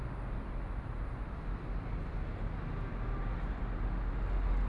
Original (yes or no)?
yes